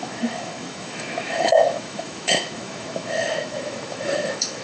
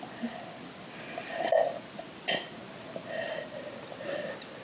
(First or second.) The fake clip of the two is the first